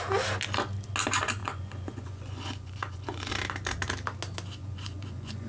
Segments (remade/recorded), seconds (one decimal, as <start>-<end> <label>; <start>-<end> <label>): 0.0-1.4 recorded; 1.4-3.3 remade; 3.3-4.6 recorded; 4.6-5.5 remade